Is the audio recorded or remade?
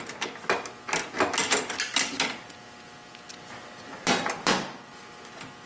recorded